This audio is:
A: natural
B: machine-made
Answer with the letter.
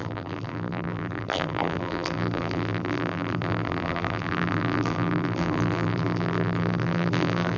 B